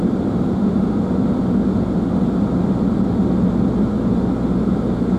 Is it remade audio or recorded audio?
recorded